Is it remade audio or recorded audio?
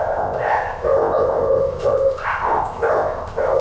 remade